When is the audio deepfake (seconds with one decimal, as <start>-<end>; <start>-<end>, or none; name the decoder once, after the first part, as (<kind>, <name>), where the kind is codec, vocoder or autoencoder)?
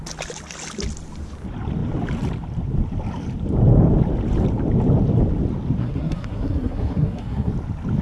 5.8-7.5 (codec, SNAC)